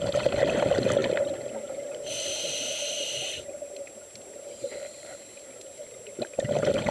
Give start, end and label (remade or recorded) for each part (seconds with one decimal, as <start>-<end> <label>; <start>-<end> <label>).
0.0-6.9 recorded